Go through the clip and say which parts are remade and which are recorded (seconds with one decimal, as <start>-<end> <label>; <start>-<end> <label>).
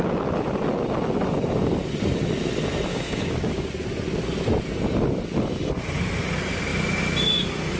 0.0-2.9 recorded; 2.9-3.7 remade; 3.7-7.8 recorded